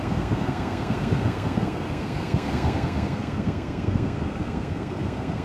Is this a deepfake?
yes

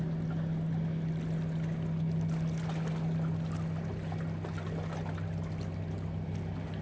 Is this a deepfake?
no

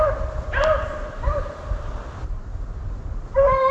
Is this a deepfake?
no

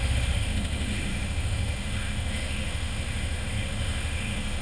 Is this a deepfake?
yes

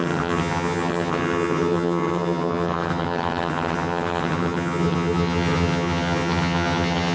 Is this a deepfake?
yes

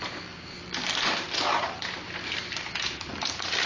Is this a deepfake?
yes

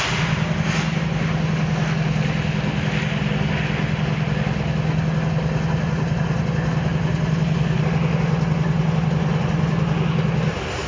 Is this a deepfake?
no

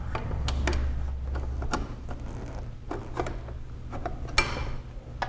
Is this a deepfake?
no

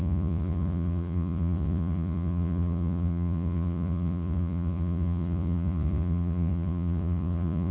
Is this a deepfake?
yes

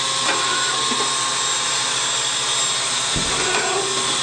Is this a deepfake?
no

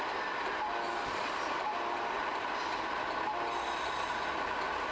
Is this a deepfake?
no